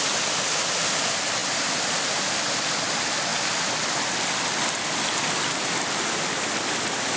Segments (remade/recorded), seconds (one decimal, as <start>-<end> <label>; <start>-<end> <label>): 0.0-7.2 recorded